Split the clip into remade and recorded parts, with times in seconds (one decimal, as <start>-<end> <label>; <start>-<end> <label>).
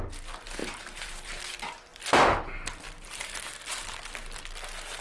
0.0-0.6 recorded; 0.6-1.4 remade; 1.4-5.0 recorded